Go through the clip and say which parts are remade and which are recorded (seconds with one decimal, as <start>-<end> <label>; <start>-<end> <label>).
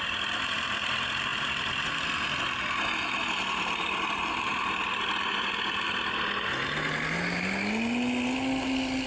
0.0-1.3 recorded; 1.3-5.3 remade; 5.3-9.1 recorded